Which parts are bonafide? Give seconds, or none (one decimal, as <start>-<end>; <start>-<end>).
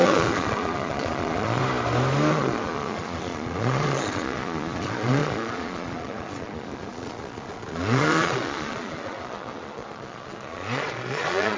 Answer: 1.6-2.3